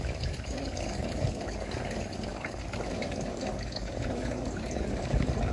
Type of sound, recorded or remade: remade